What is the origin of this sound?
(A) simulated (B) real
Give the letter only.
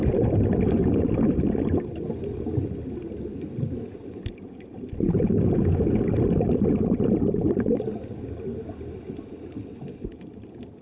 B